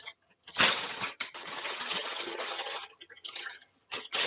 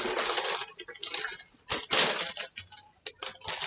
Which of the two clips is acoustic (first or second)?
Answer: second